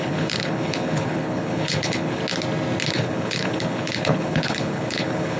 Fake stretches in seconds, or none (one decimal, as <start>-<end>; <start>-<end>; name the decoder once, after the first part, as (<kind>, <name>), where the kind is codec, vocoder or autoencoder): 0.0-2.2 (codec, HILCodec); 2.9-5.4